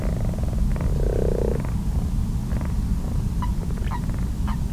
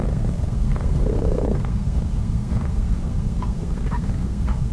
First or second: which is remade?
second